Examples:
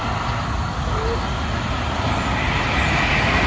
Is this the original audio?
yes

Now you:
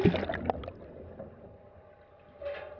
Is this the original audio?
yes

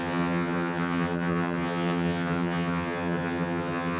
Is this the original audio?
no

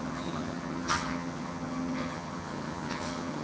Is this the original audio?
no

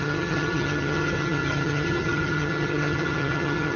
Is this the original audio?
no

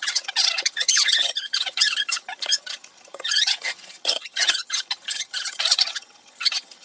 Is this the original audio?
no